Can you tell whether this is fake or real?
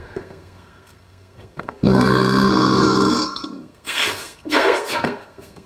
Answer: fake